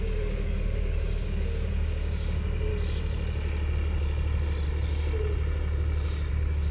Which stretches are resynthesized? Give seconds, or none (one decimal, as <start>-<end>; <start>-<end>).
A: 0.0-2.7; 6.3-6.7